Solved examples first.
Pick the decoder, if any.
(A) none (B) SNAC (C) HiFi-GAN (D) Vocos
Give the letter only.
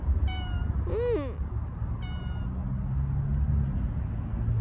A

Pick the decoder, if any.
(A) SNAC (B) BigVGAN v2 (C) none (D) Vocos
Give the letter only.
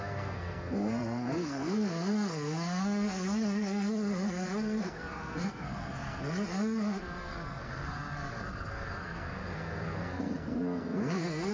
A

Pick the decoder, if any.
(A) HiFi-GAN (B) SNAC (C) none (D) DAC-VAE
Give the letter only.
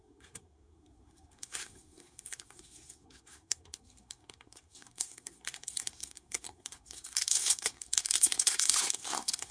B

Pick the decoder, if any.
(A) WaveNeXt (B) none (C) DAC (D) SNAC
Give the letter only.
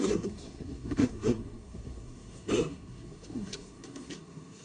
D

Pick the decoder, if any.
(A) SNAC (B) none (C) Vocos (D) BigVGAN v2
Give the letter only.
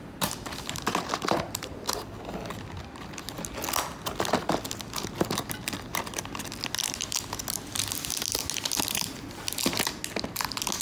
B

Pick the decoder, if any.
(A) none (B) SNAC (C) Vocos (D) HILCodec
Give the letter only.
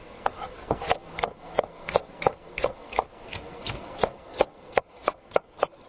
B